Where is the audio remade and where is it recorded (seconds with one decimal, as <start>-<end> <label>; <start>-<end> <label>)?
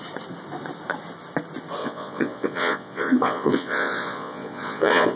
0.0-1.8 recorded; 1.8-5.2 remade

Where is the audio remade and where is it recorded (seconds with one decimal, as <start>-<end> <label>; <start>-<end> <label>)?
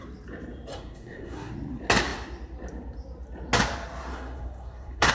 0.0-0.7 recorded; 0.7-1.5 remade; 1.5-4.1 recorded; 4.1-5.1 remade